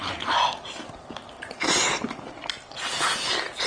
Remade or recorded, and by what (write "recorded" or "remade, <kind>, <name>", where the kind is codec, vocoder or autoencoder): recorded